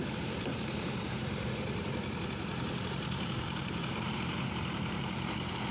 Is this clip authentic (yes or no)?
no